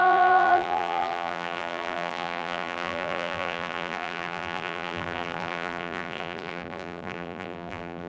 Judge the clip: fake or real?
fake